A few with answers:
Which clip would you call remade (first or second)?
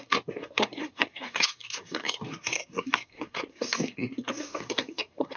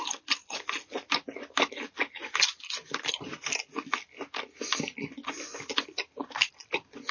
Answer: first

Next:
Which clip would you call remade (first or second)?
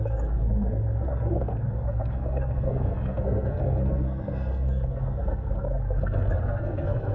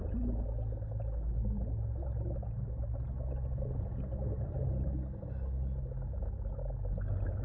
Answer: first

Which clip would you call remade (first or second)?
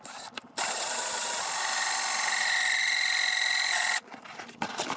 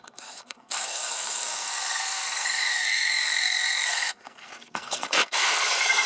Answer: second